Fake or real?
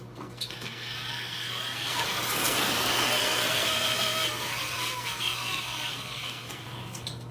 fake